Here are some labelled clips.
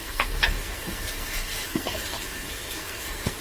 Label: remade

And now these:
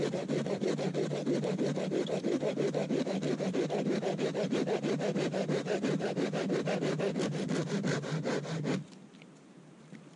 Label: recorded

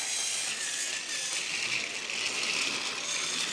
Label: recorded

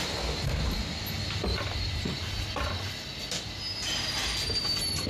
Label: recorded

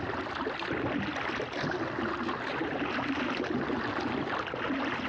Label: recorded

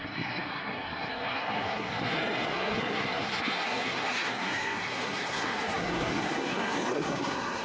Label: remade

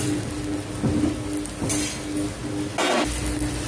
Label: recorded